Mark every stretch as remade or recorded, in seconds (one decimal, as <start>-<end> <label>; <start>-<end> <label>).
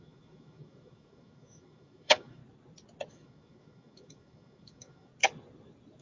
0.0-2.4 remade; 2.4-3.1 recorded; 3.1-5.1 remade; 5.1-6.0 recorded